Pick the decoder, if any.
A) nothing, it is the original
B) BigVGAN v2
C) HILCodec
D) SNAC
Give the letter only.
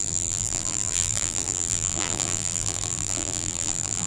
B